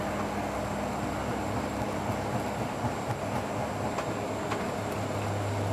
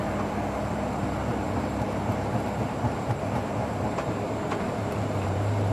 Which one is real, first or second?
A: first